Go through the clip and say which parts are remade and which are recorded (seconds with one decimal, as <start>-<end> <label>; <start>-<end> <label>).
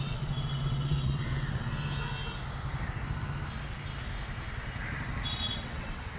0.0-1.7 remade; 1.7-5.4 recorded; 5.4-6.2 remade